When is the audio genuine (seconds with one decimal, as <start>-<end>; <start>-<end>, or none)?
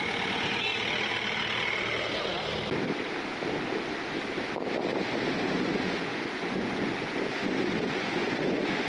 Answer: 0.7-5.5